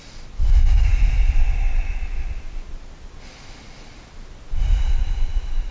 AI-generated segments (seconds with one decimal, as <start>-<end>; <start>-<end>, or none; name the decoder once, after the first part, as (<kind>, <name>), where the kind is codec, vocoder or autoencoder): none